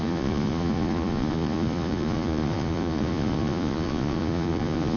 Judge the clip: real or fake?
fake